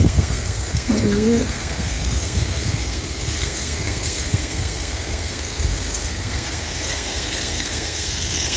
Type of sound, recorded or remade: remade